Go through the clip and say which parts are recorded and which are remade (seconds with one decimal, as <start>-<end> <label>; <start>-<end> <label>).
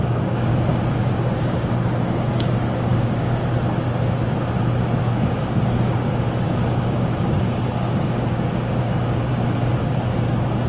0.0-0.5 remade; 0.5-1.1 recorded; 1.1-3.4 remade; 3.4-5.0 recorded; 5.0-9.3 remade; 9.3-9.8 recorded; 9.8-10.7 remade